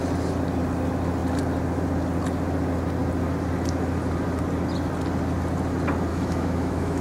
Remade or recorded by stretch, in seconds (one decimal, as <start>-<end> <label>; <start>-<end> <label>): 0.0-6.1 recorded; 6.1-7.0 remade